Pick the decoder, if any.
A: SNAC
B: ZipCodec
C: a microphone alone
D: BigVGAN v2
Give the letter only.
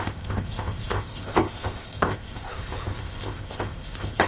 B